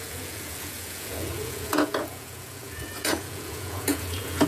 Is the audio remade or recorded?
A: remade